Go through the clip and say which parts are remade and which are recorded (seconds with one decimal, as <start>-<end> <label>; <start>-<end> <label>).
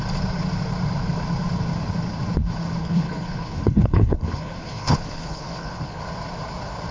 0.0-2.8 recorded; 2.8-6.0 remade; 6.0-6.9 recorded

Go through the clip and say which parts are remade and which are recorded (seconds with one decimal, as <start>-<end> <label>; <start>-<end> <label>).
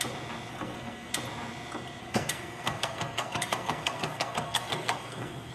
0.0-0.5 recorded; 0.5-1.1 remade; 1.1-2.0 recorded; 2.0-5.5 remade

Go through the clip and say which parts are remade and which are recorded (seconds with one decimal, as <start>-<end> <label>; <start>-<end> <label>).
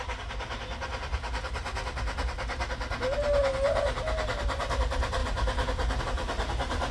0.0-6.9 recorded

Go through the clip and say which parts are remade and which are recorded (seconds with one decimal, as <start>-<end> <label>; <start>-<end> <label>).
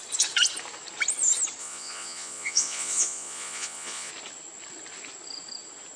0.0-1.6 recorded; 1.6-4.1 remade; 4.1-6.0 recorded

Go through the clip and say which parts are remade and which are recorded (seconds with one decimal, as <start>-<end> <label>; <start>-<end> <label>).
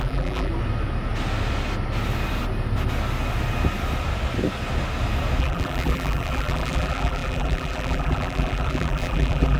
0.0-0.5 remade; 0.5-5.4 recorded; 5.4-9.6 remade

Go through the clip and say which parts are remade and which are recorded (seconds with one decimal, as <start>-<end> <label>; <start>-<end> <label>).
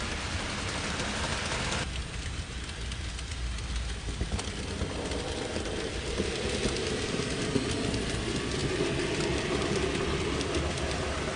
0.0-11.4 recorded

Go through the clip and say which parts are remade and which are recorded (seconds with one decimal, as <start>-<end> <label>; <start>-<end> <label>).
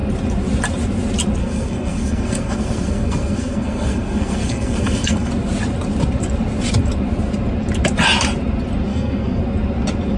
0.0-1.4 recorded; 1.4-5.3 remade; 5.3-8.9 recorded; 8.9-9.4 remade; 9.4-10.2 recorded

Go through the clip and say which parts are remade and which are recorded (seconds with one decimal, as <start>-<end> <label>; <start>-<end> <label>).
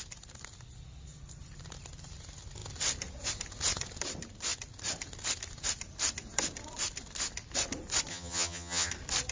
0.0-8.1 recorded; 8.1-8.9 remade; 8.9-9.3 recorded